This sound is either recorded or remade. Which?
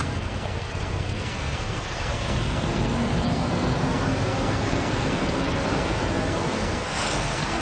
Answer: remade